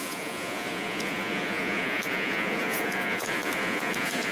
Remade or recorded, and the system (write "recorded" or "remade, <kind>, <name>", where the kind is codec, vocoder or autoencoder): remade, vocoder, Vocos